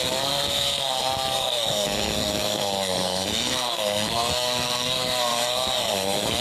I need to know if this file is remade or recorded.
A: remade